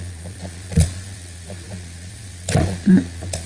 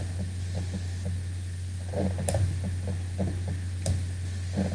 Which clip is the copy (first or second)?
first